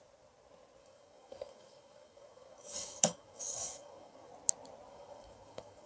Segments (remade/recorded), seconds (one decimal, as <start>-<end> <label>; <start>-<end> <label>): 0.0-0.8 recorded; 0.8-4.3 remade; 4.3-4.9 recorded; 4.9-5.9 remade